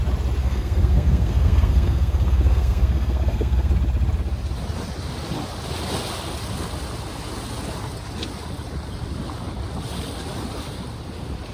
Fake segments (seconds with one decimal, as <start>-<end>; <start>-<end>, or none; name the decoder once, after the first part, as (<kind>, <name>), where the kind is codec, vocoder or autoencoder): 0.4-3.7 (codec, SNAC)